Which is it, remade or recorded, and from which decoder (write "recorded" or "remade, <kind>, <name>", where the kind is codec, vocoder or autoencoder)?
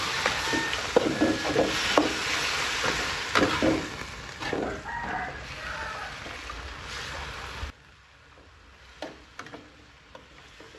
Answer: recorded